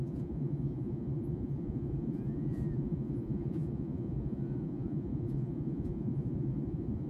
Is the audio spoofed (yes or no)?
yes